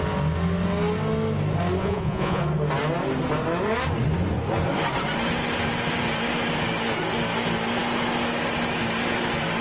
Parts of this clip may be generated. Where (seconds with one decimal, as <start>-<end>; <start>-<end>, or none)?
1.8-2.4